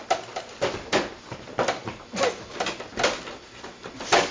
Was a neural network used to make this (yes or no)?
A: no